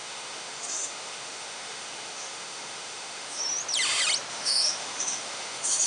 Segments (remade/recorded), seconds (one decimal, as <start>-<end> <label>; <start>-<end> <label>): 0.0-3.4 remade; 3.4-4.3 recorded; 4.3-5.9 remade